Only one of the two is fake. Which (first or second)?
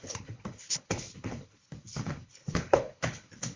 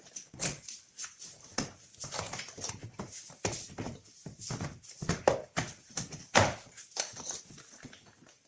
first